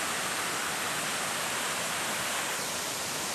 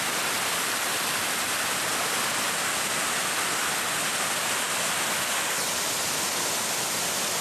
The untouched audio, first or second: second